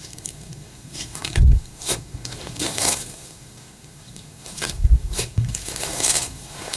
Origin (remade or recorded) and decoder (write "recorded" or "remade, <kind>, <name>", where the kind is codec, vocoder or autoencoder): remade, codec, SNAC